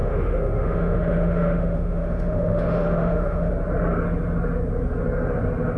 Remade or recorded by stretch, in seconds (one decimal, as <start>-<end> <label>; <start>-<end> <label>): 0.0-3.5 remade; 3.5-5.8 recorded